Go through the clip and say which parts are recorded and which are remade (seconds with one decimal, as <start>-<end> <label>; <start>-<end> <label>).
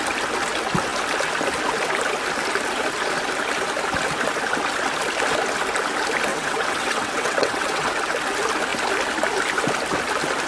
0.0-6.3 recorded; 6.3-7.9 remade; 7.9-10.5 recorded